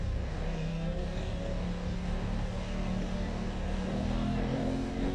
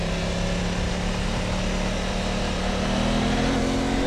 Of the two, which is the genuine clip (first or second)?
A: second